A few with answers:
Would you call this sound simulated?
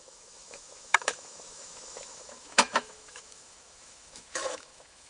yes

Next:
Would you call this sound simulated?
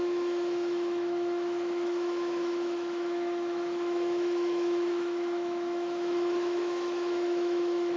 yes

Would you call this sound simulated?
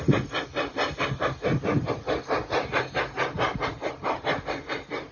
no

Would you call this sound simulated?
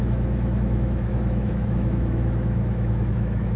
yes